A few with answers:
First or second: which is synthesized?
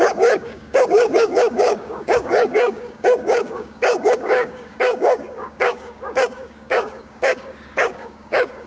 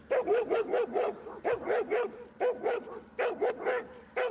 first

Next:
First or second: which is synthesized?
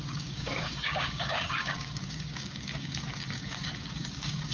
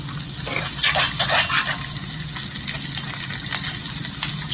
first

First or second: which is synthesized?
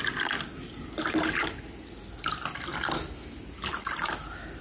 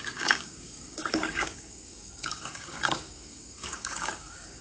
second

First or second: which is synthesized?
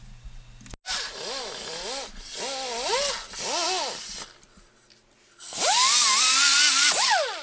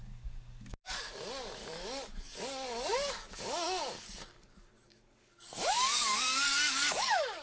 second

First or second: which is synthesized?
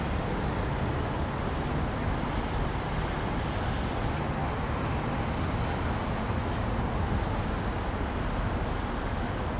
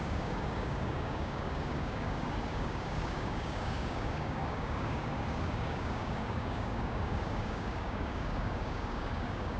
second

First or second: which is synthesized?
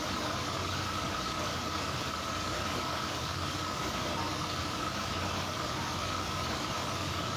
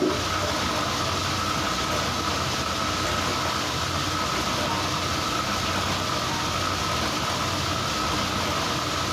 first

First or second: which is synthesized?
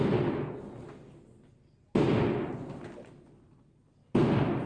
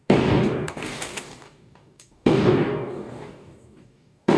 second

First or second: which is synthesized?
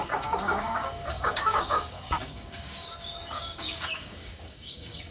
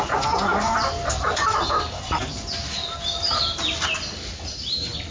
first